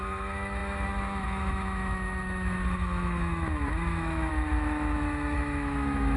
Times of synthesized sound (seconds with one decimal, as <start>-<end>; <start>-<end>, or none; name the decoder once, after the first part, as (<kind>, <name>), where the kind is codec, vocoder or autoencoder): 0.0-6.2 (autoencoder, DAC-VAE)